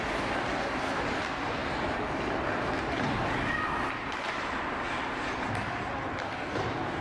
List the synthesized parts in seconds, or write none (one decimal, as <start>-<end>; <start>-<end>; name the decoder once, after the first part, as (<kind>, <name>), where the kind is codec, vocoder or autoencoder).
none